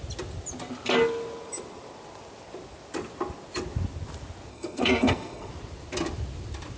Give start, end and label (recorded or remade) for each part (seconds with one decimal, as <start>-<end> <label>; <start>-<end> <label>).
0.0-4.5 recorded; 4.5-5.5 remade; 5.5-6.8 recorded